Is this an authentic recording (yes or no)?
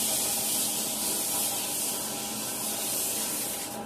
yes